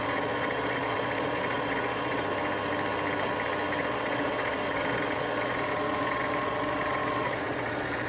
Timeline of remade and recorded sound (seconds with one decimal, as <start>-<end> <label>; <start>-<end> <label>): 0.0-2.2 remade; 2.2-3.8 recorded; 3.8-8.1 remade